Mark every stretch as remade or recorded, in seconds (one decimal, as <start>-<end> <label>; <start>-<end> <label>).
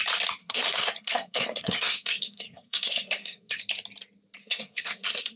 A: 0.0-0.4 recorded; 0.4-3.6 remade; 3.6-4.4 recorded; 4.4-5.4 remade